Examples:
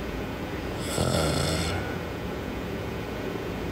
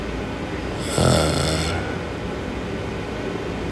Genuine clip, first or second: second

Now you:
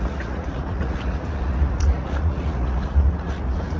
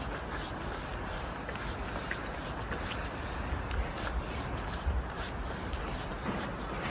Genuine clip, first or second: second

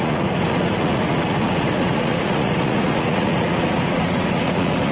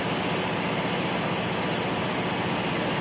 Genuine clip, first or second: second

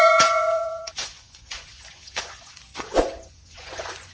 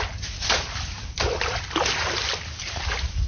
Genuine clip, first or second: second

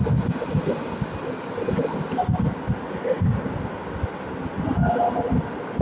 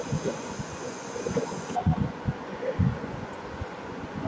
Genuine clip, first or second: first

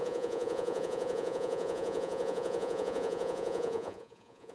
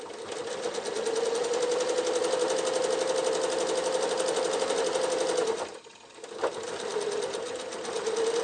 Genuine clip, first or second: second